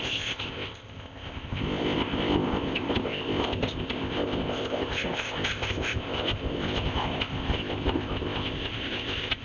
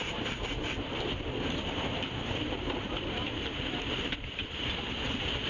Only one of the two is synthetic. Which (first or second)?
first